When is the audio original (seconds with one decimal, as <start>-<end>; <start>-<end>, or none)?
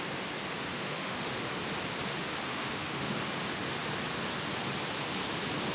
0.0-0.7; 1.6-2.5; 3.1-5.7